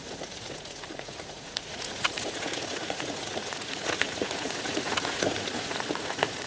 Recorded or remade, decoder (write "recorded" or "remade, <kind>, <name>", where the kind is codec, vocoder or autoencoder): remade, vocoder, Vocos